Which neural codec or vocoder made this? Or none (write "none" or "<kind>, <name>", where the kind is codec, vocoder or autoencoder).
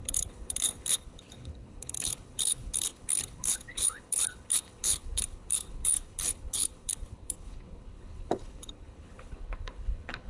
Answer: codec, HILCodec